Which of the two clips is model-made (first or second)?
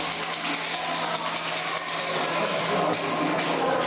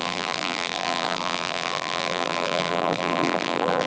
second